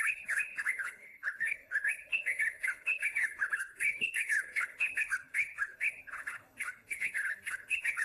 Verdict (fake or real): fake